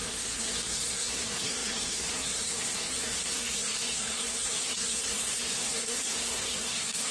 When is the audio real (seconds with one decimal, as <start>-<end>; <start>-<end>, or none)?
none